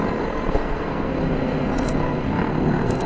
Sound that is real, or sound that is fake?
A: fake